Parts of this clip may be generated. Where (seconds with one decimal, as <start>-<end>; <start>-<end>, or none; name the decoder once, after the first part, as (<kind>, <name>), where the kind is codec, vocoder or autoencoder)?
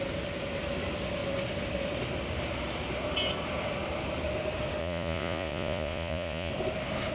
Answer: 4.8-6.5 (vocoder, Vocos)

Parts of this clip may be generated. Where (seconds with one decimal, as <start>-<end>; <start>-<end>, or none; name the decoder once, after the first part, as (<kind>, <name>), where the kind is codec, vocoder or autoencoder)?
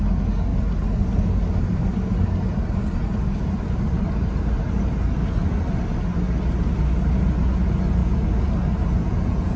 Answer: 8.0-8.5 (vocoder, Vocos); 9.0-9.6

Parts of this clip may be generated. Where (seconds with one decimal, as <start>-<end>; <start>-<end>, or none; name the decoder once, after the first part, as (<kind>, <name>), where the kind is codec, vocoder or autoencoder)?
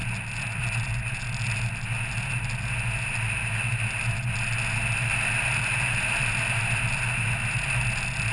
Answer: none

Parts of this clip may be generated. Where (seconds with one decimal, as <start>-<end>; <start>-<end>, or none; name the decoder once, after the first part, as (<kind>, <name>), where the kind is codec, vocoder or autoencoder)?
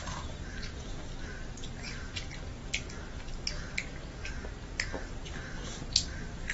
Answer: none